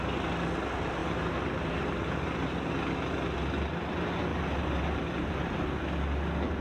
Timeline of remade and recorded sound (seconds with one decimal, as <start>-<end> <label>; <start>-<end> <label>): 0.0-1.0 recorded; 1.0-2.7 remade; 2.7-4.3 recorded; 4.3-5.3 remade; 5.3-6.6 recorded